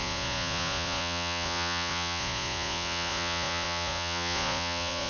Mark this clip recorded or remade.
remade